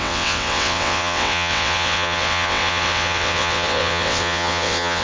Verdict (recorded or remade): remade